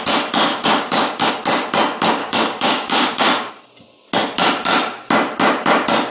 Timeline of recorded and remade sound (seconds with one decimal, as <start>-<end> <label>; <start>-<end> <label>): 0.0-0.5 recorded; 0.5-1.3 remade; 1.3-2.2 recorded; 2.2-3.5 remade; 3.5-6.1 recorded